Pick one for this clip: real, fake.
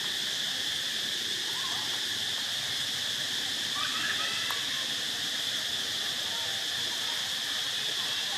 real